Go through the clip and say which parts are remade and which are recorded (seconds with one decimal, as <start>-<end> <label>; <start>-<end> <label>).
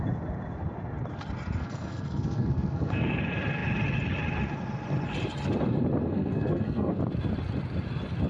0.0-1.6 recorded; 1.6-3.2 remade; 3.2-6.0 recorded; 6.0-7.0 remade; 7.0-8.3 recorded